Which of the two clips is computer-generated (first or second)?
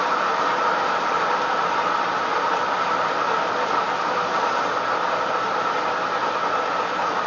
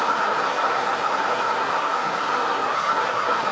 second